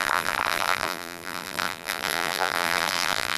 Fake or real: fake